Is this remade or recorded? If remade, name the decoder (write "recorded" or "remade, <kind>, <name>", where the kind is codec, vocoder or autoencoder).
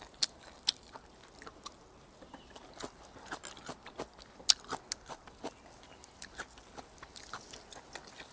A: recorded